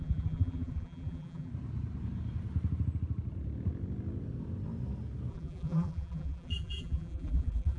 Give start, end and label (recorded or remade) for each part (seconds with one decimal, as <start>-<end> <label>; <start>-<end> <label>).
0.0-1.5 remade; 1.5-5.3 recorded; 5.3-7.8 remade